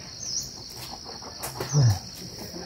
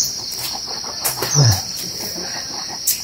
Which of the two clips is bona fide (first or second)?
first